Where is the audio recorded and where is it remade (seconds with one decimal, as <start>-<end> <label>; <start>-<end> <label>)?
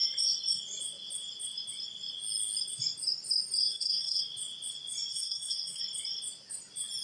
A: 0.0-3.7 recorded; 3.7-4.2 remade; 4.2-5.1 recorded; 5.1-5.8 remade; 5.8-7.0 recorded